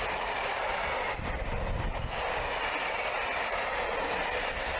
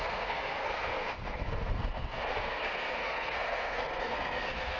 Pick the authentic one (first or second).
first